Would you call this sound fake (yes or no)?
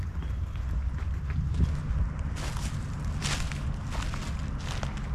no